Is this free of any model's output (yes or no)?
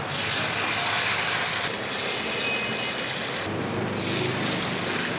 yes